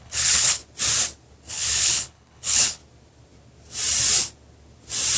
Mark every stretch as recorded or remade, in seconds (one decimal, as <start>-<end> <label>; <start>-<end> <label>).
0.0-0.6 remade; 0.6-1.5 recorded; 1.5-2.8 remade; 2.8-5.2 recorded